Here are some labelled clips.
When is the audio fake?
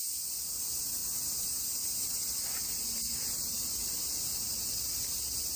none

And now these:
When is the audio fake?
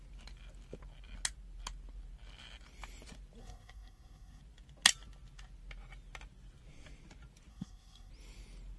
3.4-4.4 (codec, SNAC); 7.5-8.1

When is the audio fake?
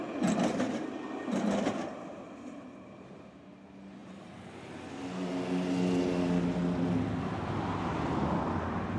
none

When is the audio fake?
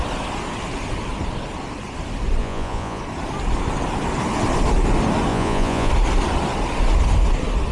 2.4-3.0 (vocoder, Vocos); 5.3-5.9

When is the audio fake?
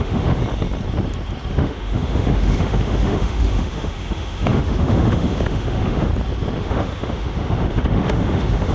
0.0-0.4 (autoencoder, DAC-VAE); 1.5-6.1; 6.6-8.7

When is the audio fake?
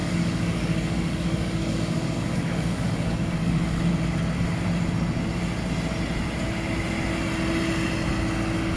0.0-3.8 (codec, DAC)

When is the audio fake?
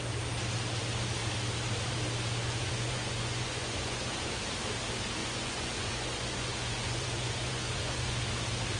2.4-4.4 (vocoder, Vocos); 5.2-8.2